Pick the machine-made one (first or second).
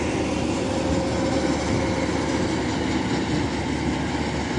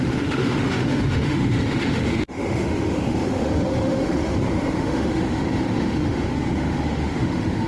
second